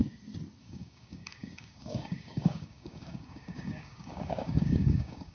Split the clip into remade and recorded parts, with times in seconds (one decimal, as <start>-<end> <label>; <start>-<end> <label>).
0.0-0.6 recorded; 0.6-5.3 remade